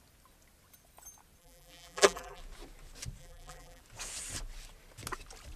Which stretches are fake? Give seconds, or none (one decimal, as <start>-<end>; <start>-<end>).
1.4-2.4; 3.2-3.8